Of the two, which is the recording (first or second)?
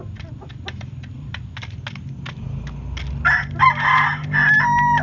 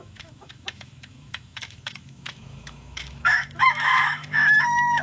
first